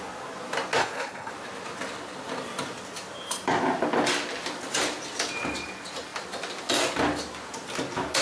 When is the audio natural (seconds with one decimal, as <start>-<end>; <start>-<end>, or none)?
0.0-0.8; 1.3-8.2